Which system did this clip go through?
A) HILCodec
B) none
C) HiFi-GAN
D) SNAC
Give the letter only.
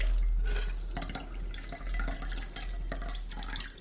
B